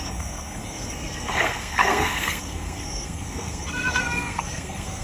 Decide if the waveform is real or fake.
fake